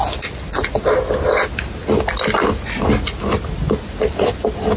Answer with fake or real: real